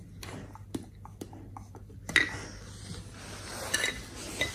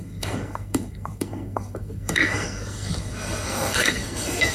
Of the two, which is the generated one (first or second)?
second